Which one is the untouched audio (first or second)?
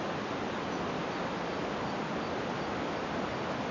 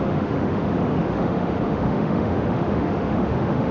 first